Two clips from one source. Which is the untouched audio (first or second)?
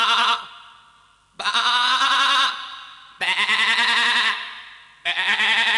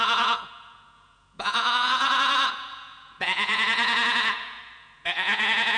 first